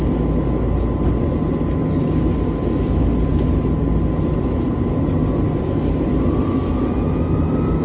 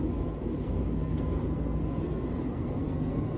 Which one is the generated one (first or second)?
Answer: second